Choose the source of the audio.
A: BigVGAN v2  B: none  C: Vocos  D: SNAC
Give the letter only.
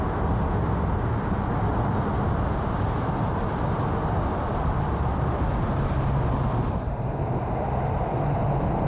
B